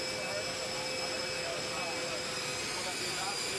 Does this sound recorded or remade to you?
recorded